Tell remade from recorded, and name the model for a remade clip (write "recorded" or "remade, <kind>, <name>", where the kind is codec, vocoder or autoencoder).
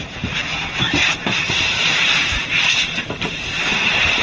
remade, vocoder, BigVGAN v2